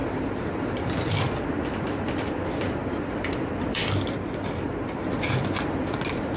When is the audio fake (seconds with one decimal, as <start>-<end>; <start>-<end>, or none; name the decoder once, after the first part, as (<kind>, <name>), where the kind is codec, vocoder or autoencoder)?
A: 0.6-3.8 (vocoder, BigVGAN v2); 5.4-6.4